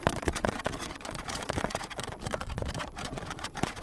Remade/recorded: remade